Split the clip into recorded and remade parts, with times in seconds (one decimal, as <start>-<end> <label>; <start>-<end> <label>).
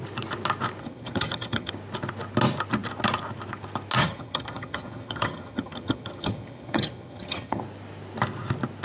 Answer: 0.0-0.8 recorded; 0.8-1.7 remade; 1.7-4.0 recorded; 4.0-7.6 remade; 7.6-8.8 recorded